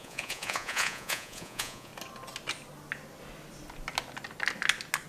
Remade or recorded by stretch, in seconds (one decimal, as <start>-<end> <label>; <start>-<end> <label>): 0.0-1.9 remade; 1.9-5.1 recorded